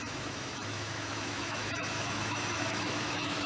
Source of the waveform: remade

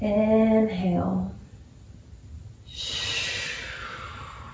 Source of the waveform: recorded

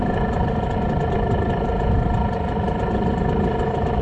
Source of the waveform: recorded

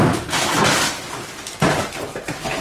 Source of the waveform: recorded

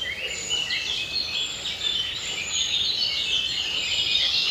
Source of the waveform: recorded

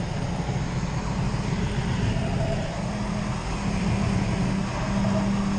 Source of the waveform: recorded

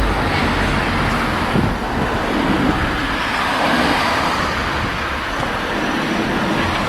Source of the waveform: recorded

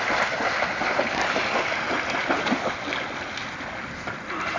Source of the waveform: recorded